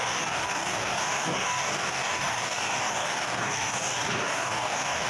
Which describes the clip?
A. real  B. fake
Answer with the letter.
B